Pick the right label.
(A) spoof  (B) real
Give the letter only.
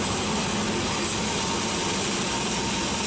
B